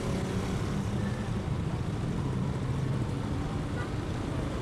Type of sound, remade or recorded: recorded